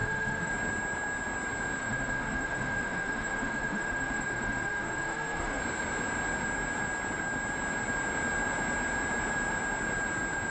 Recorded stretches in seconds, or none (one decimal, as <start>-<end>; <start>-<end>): 0.5-1.8; 5.6-10.5